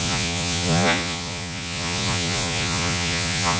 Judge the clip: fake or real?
fake